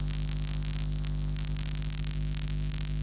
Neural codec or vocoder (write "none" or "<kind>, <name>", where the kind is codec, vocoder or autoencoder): none